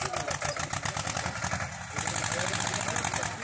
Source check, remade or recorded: recorded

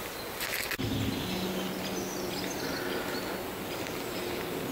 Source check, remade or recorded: recorded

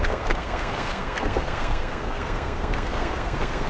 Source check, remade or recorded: remade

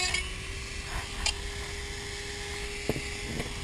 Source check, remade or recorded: recorded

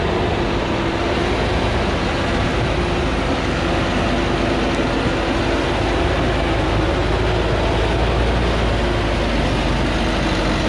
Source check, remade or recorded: recorded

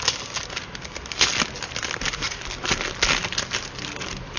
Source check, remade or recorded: recorded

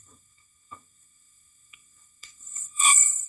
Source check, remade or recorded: remade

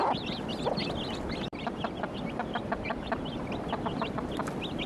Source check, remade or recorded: remade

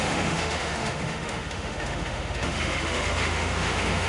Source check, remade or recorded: remade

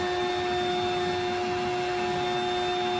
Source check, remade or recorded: recorded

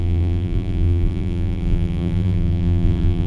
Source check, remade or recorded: remade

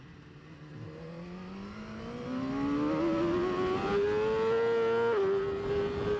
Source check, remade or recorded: recorded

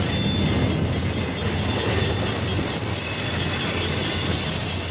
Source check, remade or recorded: recorded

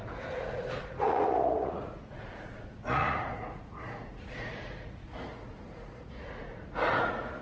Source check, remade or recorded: remade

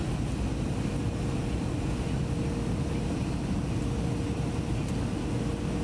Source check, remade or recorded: recorded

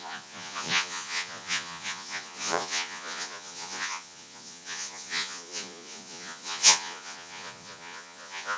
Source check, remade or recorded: remade